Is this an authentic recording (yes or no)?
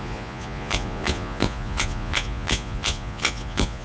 no